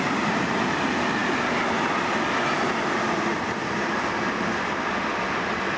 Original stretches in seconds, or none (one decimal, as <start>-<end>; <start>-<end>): 0.0-5.8